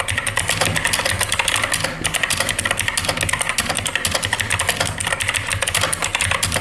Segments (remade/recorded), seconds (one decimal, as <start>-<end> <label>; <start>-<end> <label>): 0.0-6.6 recorded